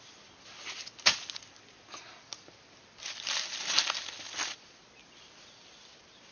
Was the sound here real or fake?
real